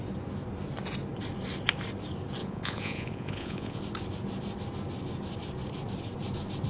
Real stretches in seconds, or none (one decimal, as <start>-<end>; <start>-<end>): 0.0-2.4; 3.8-6.7